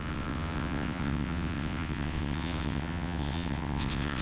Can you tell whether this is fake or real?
fake